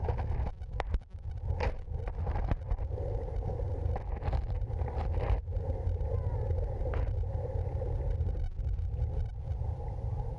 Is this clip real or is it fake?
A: real